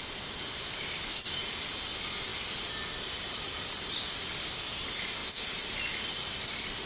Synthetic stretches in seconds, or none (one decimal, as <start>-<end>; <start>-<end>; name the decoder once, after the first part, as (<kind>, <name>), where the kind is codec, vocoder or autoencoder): none